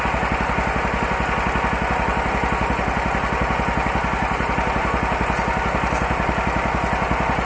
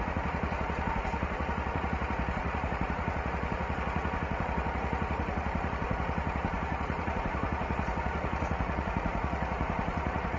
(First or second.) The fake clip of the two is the second